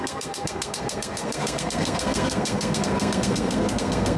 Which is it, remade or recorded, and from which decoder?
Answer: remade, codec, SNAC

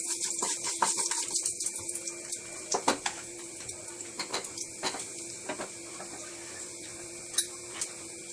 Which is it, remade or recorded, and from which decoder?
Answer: remade, vocoder, BigVGAN v2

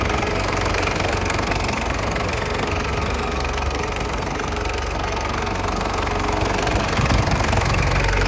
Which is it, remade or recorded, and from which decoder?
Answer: remade, codec, SNAC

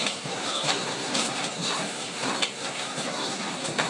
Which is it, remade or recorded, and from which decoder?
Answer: remade, codec, SNAC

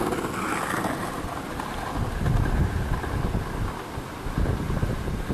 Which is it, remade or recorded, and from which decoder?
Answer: recorded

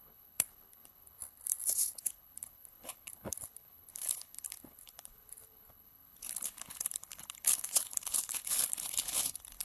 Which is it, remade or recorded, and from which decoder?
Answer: remade, codec, HILCodec